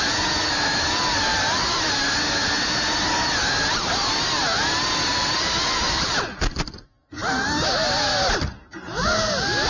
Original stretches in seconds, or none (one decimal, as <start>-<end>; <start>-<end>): 0.0-1.3; 1.9-5.1; 6.1-9.7